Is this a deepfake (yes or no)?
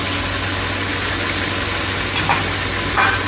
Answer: no